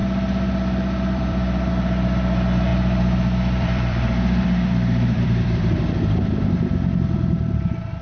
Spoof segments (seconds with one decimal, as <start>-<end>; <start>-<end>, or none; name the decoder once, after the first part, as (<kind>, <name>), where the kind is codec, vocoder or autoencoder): 0.0-1.7 (vocoder, BigVGAN v2); 2.7-5.8